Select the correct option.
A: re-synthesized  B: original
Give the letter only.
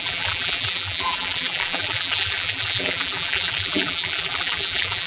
A